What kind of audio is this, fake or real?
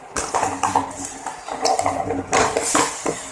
real